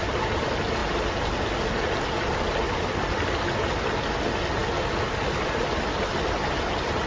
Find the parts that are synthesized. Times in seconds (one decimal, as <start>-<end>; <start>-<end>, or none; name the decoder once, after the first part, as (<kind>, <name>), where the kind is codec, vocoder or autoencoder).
none